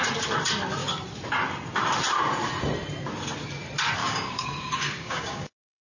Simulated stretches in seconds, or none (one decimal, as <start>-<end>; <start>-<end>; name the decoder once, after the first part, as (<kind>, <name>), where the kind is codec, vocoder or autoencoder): 4.0-5.8 (codec, DAC)